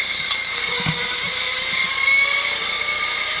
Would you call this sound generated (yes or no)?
yes